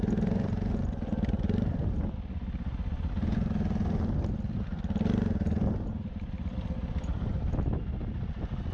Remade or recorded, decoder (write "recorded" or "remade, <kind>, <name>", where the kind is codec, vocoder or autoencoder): recorded